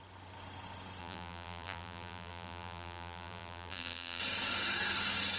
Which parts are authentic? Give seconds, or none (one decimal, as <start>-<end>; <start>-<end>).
0.0-1.0; 4.2-5.4